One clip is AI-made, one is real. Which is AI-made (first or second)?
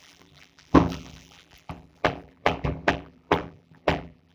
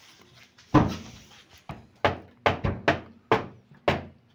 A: first